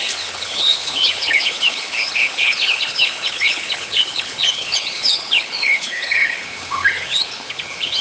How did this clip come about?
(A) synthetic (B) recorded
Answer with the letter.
A